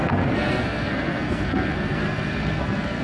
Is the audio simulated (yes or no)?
yes